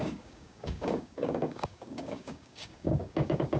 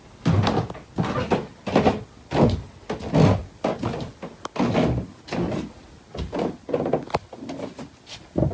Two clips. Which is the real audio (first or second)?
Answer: second